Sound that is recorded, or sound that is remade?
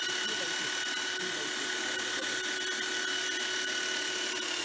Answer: recorded